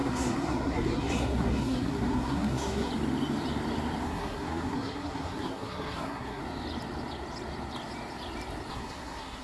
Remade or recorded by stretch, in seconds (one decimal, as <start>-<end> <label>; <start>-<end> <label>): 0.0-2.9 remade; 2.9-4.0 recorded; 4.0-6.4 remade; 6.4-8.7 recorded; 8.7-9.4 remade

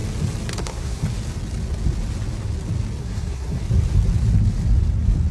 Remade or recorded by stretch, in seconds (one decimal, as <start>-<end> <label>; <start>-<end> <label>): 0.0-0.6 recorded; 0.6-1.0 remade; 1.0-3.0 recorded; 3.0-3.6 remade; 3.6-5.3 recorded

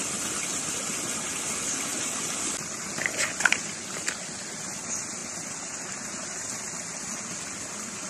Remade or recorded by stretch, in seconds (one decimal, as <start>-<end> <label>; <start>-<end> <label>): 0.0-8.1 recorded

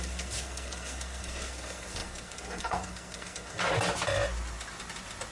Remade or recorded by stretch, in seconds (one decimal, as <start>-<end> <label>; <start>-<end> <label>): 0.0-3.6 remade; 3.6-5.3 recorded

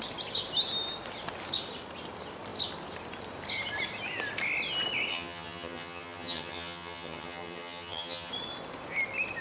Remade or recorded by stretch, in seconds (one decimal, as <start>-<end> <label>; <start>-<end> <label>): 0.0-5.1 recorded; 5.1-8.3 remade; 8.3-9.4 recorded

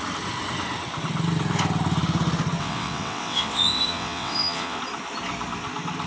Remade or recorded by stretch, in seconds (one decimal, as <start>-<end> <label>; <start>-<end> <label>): 0.0-2.6 recorded; 2.6-4.8 remade; 4.8-6.1 recorded

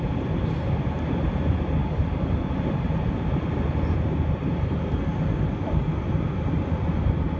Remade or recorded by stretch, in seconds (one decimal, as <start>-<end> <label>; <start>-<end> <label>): 0.0-1.8 recorded; 1.8-2.5 remade; 2.5-7.4 recorded

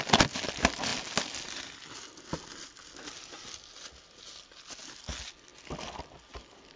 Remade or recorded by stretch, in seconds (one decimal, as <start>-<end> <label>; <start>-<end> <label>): 0.0-6.8 recorded